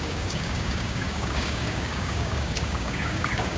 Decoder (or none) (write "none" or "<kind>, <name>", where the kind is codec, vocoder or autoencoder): codec, DAC